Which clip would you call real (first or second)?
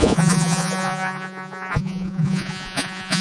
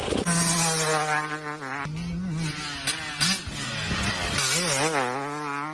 second